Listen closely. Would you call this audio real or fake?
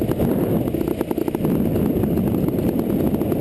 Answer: real